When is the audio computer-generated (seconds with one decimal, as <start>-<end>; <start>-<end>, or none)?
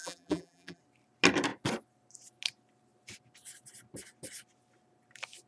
0.0-0.8